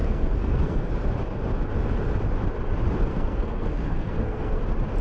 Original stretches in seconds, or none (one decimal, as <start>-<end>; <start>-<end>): 0.9-3.1; 4.6-5.0

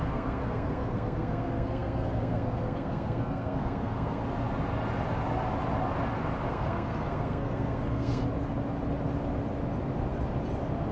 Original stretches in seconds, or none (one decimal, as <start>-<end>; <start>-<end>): 4.2-6.5; 8.2-10.9

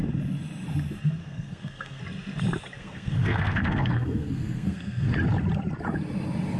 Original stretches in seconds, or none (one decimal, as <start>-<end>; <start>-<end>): 0.0-1.2; 2.0-2.8; 5.1-6.6

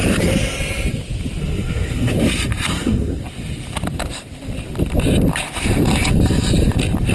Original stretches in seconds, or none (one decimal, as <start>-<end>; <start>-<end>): 0.0-1.4; 2.1-2.7; 3.2-7.1

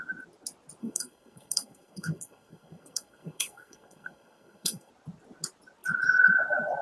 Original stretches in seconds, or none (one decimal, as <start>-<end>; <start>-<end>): 0.0-0.8; 4.9-6.8

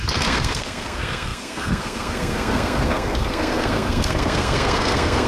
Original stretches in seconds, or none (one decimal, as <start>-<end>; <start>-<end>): none

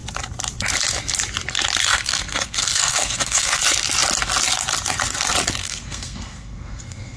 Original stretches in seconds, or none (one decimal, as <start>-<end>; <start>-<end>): 0.0-1.9; 3.6-5.6